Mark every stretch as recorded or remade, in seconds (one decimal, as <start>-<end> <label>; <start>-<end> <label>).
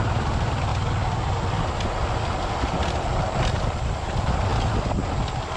0.0-0.7 remade; 0.7-4.1 recorded; 4.1-4.5 remade; 4.5-5.6 recorded